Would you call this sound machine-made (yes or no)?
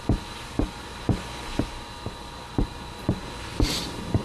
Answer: no